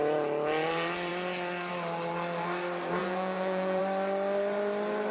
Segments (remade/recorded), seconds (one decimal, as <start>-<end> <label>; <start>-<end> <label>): 0.0-3.0 recorded; 3.0-3.8 remade; 3.8-5.1 recorded

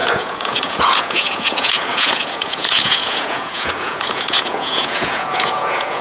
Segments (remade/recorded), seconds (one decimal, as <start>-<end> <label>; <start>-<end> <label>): 0.0-6.0 remade